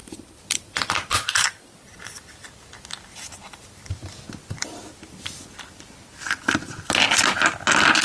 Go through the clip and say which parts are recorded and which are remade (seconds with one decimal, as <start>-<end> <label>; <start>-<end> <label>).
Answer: 0.0-1.1 remade; 1.1-3.4 recorded; 3.4-7.2 remade; 7.2-8.0 recorded